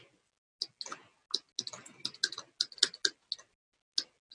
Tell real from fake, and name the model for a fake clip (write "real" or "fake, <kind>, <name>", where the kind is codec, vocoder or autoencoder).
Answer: real